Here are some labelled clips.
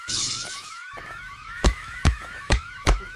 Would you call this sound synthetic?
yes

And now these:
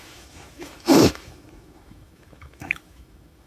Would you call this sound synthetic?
yes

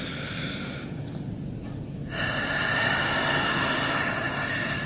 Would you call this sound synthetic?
no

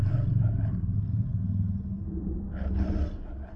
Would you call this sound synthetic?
no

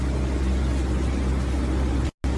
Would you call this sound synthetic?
no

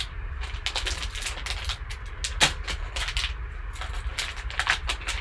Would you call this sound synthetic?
no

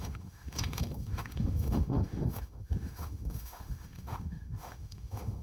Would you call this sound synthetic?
yes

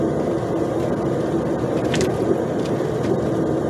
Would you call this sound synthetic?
no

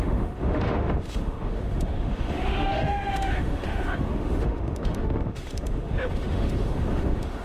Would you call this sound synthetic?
yes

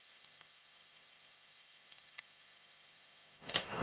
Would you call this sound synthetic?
yes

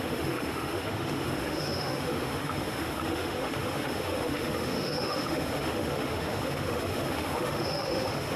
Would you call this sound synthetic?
yes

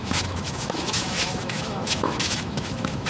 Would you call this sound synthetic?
yes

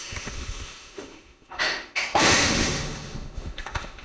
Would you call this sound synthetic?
yes